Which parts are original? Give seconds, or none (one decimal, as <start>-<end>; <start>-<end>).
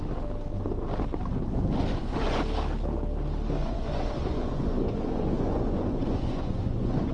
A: 0.0-1.9; 2.4-3.6